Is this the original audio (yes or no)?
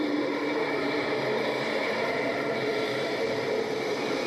no